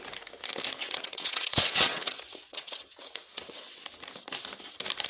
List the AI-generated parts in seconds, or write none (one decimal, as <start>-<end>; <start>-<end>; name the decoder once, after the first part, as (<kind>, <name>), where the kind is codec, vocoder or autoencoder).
0.8-3.9 (vocoder, WaveNeXt)